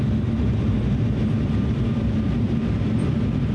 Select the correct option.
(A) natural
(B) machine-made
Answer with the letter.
B